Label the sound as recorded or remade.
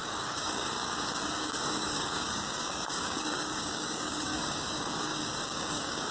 remade